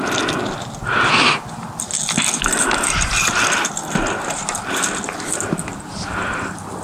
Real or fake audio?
real